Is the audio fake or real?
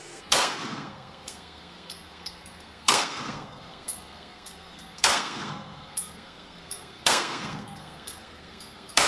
fake